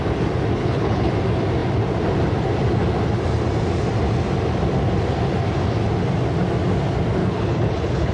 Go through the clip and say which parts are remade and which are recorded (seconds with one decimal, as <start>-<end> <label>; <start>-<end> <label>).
0.0-0.6 recorded; 0.6-1.1 remade; 1.1-7.2 recorded; 7.2-8.1 remade